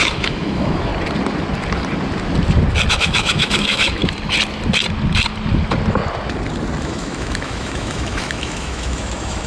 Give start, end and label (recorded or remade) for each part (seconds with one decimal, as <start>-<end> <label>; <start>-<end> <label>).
0.0-0.9 remade; 0.9-2.9 recorded; 2.9-4.0 remade; 4.0-6.8 recorded; 6.8-9.5 remade